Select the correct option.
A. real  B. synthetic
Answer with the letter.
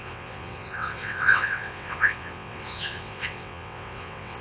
B